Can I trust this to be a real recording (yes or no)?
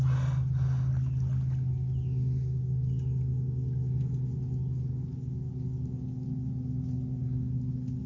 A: yes